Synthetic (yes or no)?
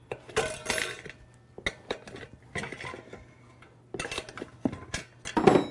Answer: no